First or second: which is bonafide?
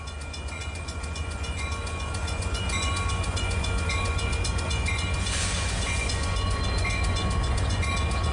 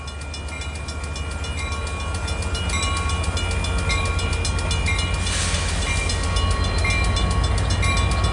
second